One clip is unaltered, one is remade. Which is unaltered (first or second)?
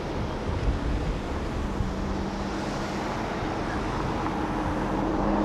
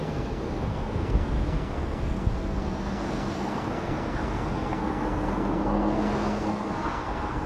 first